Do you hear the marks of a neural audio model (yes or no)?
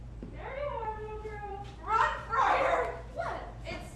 yes